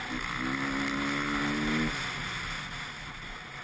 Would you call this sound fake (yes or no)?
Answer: no